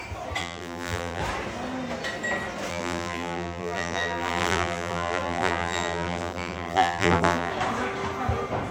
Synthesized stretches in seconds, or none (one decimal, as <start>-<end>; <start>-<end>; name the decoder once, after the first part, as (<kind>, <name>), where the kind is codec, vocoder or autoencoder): 0.4-1.2 (vocoder, BigVGAN v2); 2.7-7.5